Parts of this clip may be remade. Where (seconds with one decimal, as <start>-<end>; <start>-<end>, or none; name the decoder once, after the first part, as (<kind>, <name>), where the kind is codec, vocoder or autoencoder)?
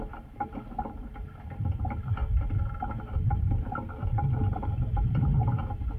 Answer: 0.0-2.2 (vocoder, BigVGAN v2); 2.9-6.0